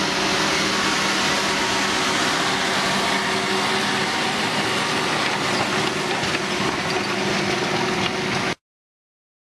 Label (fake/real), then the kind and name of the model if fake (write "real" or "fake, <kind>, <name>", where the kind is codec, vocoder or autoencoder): real